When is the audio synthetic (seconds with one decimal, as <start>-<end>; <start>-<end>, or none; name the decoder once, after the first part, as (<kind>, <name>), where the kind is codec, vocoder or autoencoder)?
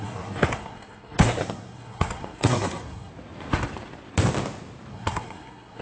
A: 0.0-3.1 (codec, SNAC); 4.9-5.8